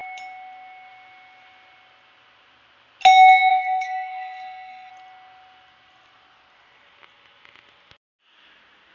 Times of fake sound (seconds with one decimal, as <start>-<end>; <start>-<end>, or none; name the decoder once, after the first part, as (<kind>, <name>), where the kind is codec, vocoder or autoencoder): 3.5-4.9 (codec, SNAC)